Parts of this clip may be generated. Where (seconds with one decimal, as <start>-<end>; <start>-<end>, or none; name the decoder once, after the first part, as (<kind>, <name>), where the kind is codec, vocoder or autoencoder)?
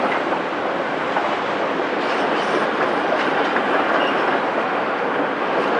0.0-5.8 (vocoder, BigVGAN v2)